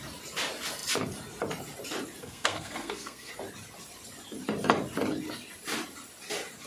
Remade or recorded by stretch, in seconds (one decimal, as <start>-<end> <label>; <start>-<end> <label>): 0.0-2.2 recorded; 2.2-3.3 remade; 3.3-6.7 recorded